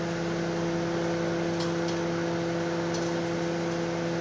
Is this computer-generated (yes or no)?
no